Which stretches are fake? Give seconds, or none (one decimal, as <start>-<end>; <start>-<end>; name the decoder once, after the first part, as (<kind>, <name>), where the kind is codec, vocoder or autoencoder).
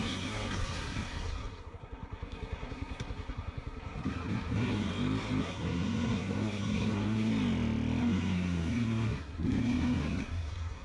0.0-4.9 (codec, SNAC); 5.4-7.3; 8.0-10.8